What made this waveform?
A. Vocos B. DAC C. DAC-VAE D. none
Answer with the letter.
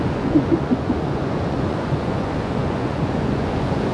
A